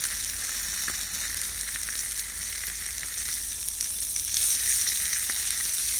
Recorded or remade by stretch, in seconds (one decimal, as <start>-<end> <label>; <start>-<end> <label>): 0.0-6.0 recorded